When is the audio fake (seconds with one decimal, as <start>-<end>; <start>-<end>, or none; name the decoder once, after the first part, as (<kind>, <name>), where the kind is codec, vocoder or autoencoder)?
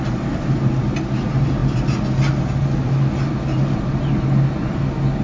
none